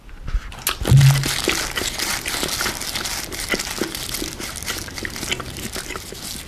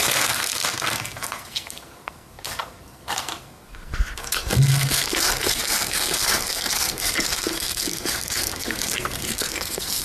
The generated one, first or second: second